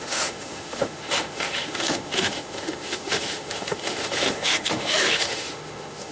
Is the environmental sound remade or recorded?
remade